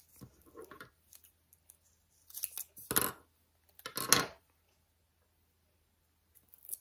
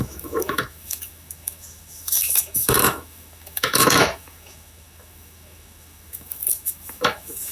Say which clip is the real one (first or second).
first